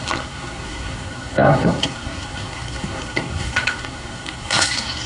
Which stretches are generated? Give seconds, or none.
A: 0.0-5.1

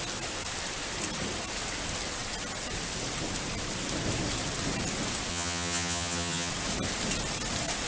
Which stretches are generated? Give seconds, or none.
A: 5.3-6.5

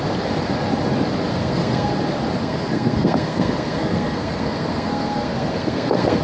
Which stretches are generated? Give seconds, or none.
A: 1.3-1.9; 2.4-6.2

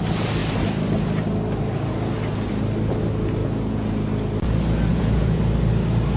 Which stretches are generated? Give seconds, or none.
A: 3.4-3.9; 4.9-5.4

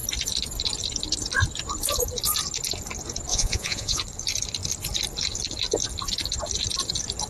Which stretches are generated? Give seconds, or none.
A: 3.3-4.0

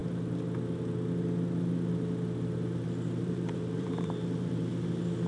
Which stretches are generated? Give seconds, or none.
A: 3.2-4.7

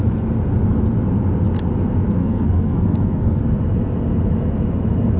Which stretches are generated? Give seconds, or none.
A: 2.2-3.4

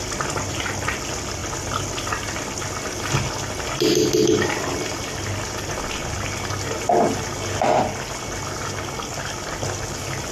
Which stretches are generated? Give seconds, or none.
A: none